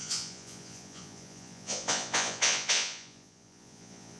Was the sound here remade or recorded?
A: remade